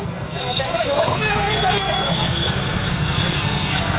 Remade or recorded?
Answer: remade